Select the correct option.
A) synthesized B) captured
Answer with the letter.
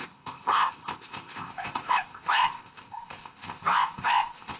A